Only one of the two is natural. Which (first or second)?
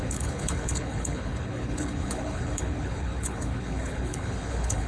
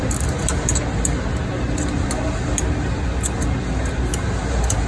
second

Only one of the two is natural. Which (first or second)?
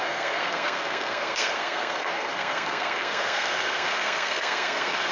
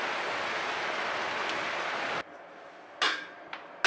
second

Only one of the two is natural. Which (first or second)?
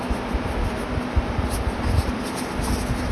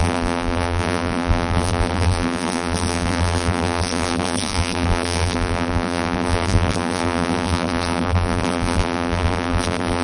first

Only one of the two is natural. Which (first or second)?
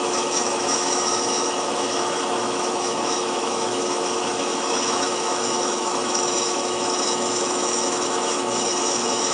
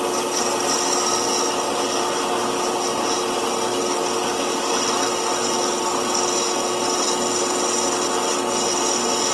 second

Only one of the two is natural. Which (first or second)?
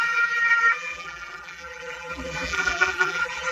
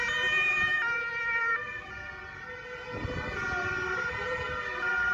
second